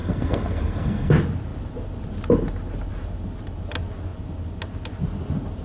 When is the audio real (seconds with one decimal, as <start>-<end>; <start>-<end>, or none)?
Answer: 1.1-5.6